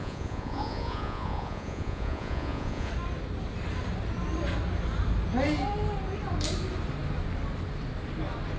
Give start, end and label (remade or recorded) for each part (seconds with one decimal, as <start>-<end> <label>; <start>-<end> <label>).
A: 0.0-2.9 remade; 2.9-8.6 recorded